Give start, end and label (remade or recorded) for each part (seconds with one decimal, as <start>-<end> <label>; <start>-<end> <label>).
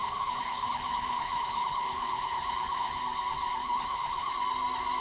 0.0-3.0 remade; 3.0-3.6 recorded; 3.6-4.3 remade; 4.3-5.0 recorded